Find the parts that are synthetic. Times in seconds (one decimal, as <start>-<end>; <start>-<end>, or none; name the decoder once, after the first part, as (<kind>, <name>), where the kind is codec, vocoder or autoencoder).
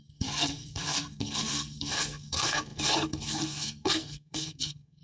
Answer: 0.0-5.0 (codec, SNAC)